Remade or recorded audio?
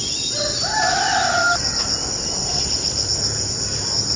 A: recorded